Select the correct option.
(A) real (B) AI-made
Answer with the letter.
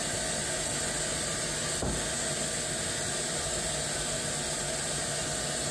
A